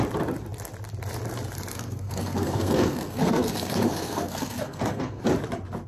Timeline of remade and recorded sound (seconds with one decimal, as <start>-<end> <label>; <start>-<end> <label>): 0.0-1.7 recorded; 1.7-5.2 remade; 5.2-5.9 recorded